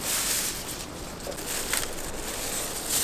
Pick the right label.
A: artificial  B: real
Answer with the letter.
B